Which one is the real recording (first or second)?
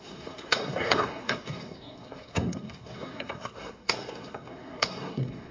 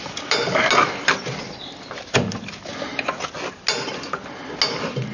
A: second